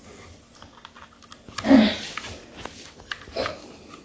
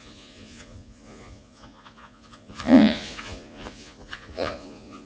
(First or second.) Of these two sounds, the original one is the first